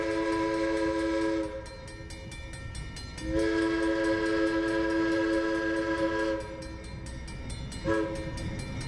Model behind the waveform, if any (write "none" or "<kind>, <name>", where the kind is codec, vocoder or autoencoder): none